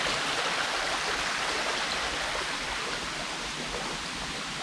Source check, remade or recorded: recorded